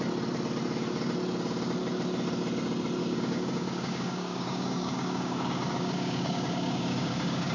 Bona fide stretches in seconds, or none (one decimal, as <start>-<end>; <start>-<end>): 0.0-3.0